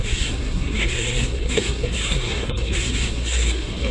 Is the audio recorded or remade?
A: remade